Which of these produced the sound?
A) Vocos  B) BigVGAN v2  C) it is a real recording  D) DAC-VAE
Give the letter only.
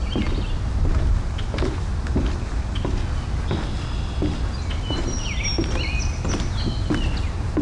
C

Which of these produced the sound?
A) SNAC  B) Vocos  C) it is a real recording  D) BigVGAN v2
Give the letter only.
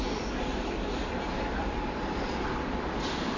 D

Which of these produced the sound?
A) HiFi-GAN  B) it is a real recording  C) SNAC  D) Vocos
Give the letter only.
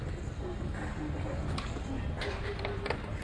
B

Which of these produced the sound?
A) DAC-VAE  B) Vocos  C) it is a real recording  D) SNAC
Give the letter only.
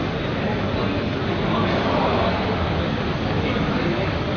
C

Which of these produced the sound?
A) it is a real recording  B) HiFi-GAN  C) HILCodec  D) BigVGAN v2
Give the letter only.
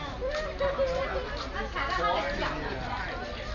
A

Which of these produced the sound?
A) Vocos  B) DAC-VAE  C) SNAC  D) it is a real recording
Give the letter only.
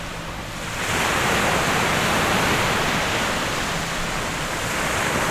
D